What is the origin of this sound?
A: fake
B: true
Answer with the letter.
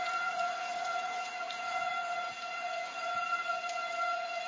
A